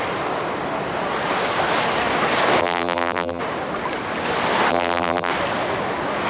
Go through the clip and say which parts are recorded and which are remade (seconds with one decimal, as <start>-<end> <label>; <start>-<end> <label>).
0.0-2.6 recorded; 2.6-3.4 remade; 3.4-4.7 recorded; 4.7-5.3 remade; 5.3-6.3 recorded